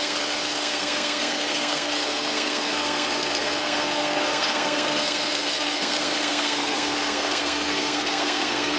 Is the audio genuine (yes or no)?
no